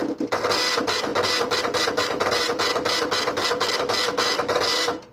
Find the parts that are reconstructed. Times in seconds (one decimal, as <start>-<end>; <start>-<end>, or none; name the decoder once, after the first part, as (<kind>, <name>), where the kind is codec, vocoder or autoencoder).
none